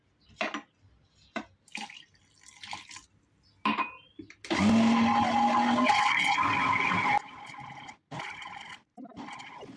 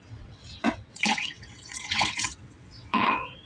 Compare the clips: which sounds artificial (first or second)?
second